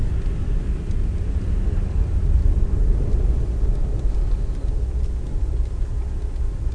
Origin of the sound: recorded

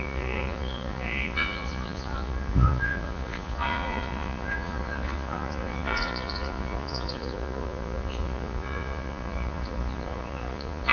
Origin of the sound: remade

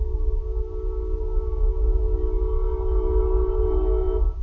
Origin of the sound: remade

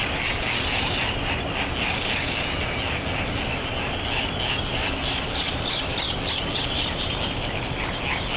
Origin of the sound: recorded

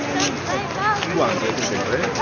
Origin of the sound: recorded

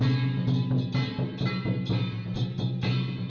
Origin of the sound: recorded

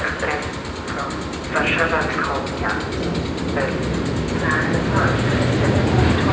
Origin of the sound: recorded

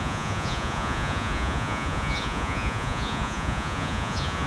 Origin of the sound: remade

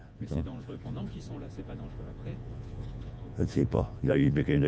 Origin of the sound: remade